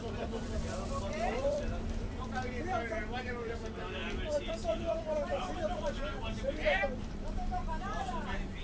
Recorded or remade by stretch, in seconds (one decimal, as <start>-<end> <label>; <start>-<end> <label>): 0.0-8.6 remade